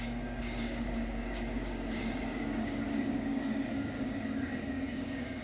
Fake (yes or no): yes